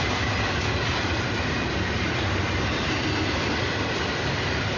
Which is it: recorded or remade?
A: recorded